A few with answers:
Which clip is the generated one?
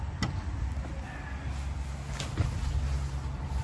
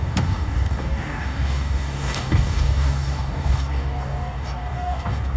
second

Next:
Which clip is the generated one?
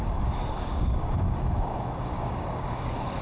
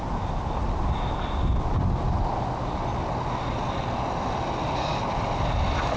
first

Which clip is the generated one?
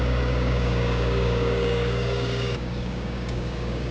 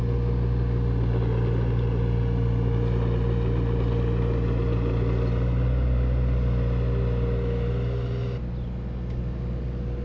first